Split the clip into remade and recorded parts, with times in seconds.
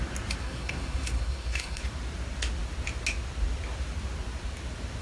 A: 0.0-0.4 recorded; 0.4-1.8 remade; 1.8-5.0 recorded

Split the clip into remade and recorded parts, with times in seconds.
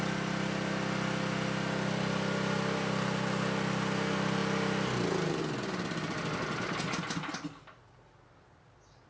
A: 0.0-9.1 recorded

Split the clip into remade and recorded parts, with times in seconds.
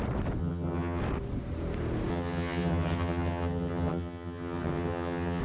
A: 0.0-0.4 recorded; 0.4-1.0 remade; 1.0-2.1 recorded; 2.1-5.4 remade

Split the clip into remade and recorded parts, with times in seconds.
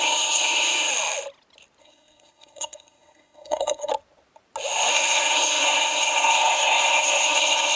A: 0.0-0.9 remade; 0.9-1.8 recorded; 1.8-3.9 remade; 3.9-4.9 recorded; 4.9-7.8 remade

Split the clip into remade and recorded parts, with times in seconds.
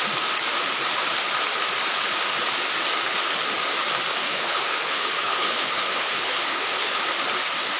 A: 0.0-4.2 recorded; 4.2-6.9 remade; 6.9-7.8 recorded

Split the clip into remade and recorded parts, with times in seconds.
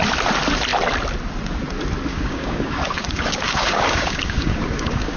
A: 0.0-2.1 recorded; 2.1-5.2 remade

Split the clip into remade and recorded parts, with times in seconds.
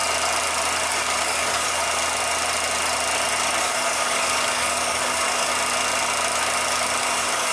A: 0.0-0.9 recorded; 0.9-1.8 remade; 1.8-3.6 recorded; 3.6-5.5 remade; 5.5-7.0 recorded; 7.0-7.5 remade